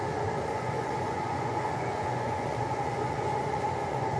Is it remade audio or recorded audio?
remade